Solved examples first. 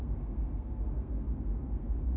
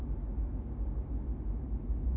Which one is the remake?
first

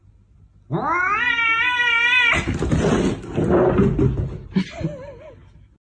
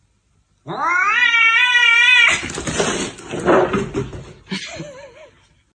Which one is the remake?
second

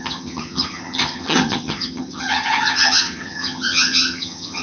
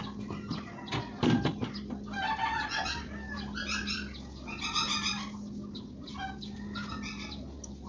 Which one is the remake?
first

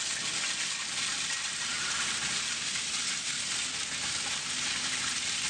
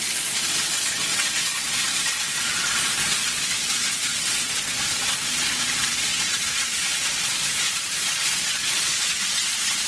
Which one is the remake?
second